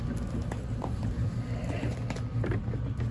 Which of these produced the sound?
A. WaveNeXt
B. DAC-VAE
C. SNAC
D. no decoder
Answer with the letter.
D